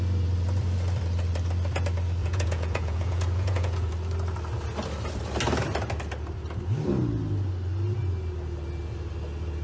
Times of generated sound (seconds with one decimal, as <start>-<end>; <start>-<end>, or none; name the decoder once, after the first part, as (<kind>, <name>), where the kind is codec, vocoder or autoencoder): 2.2-3.9 (vocoder, Vocos)

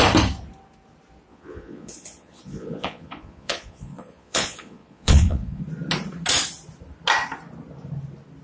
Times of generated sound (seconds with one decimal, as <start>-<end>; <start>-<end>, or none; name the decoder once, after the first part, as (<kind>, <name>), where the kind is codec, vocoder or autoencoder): 1.3-5.6 (vocoder, Vocos)

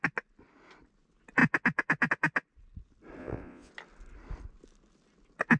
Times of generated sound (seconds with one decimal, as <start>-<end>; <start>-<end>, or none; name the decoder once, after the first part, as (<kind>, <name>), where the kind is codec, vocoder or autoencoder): 3.2-3.7 (vocoder, Vocos)

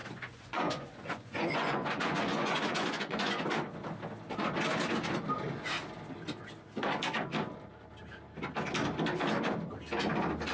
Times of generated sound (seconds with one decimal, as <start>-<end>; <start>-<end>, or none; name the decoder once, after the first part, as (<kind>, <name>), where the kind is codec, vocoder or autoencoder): 0.0-3.4 (vocoder, Vocos)